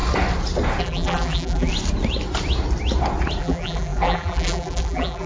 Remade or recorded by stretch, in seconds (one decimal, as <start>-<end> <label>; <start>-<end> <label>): 0.0-0.8 recorded; 0.8-1.7 remade; 1.7-3.4 recorded; 3.4-5.3 remade